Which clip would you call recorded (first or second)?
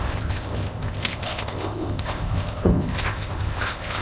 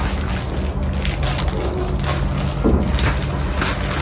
second